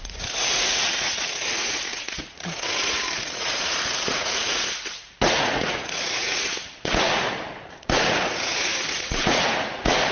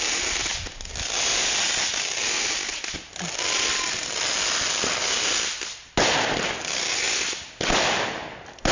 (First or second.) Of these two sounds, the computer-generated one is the first